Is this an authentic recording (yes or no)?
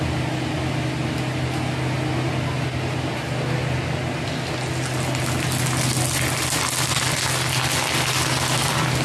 yes